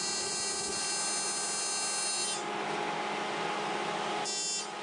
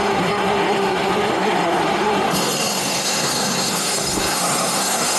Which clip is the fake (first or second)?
second